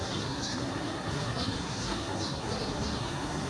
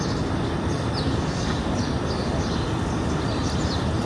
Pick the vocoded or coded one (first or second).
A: first